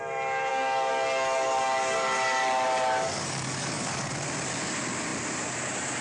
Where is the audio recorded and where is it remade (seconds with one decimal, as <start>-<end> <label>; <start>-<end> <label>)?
0.0-0.5 recorded; 0.5-4.1 remade; 4.1-6.0 recorded